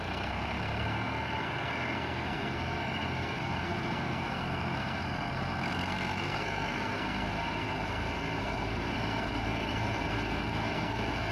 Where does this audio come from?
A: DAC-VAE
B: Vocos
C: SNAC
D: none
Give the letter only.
C